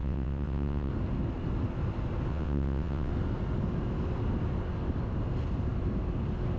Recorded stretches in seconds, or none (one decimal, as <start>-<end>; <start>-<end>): 0.9-2.3; 3.1-6.6